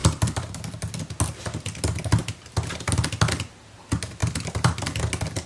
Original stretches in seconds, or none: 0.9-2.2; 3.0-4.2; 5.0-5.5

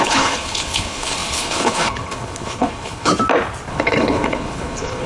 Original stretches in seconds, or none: 3.1-3.7

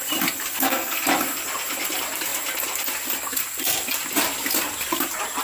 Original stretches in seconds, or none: 0.0-0.5; 1.1-5.4

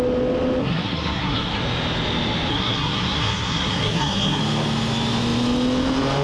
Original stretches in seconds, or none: 0.0-0.6; 1.6-2.5; 4.4-6.2

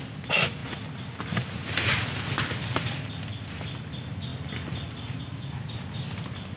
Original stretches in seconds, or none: 0.0-6.6

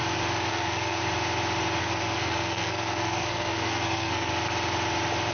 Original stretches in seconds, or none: 0.0-0.5; 1.0-1.8; 4.3-5.3

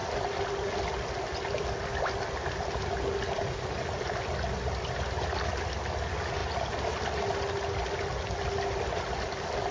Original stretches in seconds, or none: 0.0-9.7